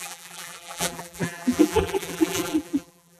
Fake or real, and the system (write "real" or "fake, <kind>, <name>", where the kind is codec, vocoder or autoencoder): fake, vocoder, BigVGAN v2